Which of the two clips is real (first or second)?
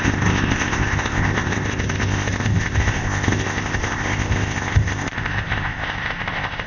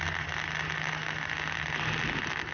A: second